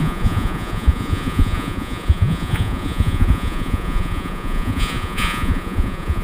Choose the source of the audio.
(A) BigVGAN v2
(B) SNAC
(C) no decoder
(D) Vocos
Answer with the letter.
D